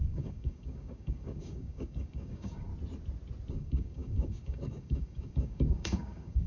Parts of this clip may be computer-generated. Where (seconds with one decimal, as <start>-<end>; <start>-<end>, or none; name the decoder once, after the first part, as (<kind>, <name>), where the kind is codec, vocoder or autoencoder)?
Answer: 0.0-2.7 (codec, DAC); 3.5-6.5